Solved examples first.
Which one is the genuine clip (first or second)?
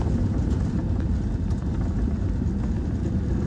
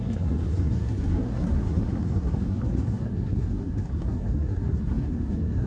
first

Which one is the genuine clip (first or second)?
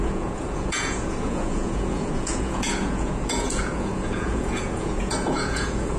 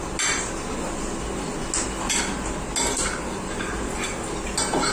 second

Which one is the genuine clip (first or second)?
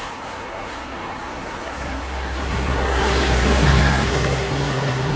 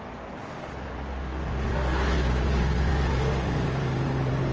second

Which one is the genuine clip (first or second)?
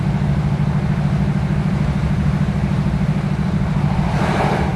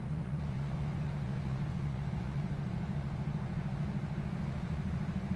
first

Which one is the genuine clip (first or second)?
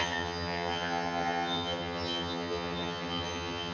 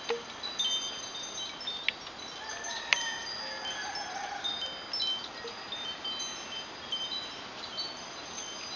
second